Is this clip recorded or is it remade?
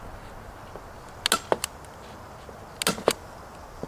recorded